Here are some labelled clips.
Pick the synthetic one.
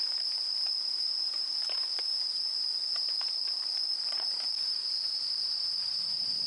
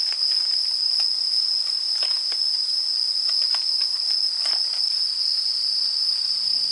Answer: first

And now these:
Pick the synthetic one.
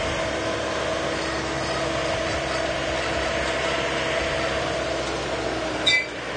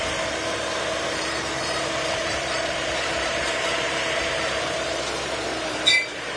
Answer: second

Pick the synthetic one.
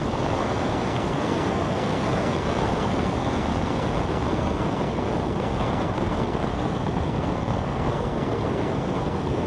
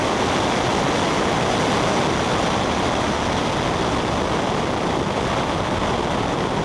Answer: first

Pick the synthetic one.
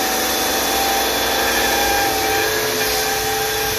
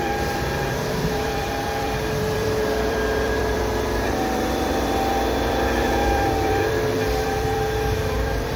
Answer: second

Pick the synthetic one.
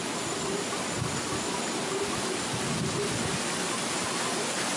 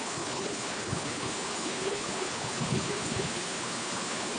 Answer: second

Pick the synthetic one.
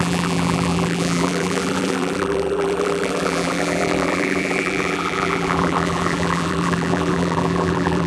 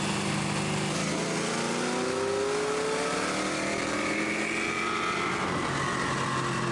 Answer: first